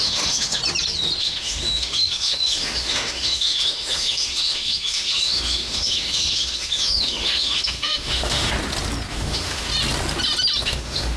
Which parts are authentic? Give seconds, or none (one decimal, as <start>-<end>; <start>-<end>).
0.6-1.2; 8.5-9.1; 9.7-10.6